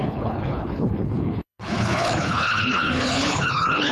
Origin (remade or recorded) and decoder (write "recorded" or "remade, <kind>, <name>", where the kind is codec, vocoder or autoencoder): remade, codec, HILCodec